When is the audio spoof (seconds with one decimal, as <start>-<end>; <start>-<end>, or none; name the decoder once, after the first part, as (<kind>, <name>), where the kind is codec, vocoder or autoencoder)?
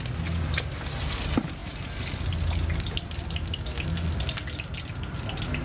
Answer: none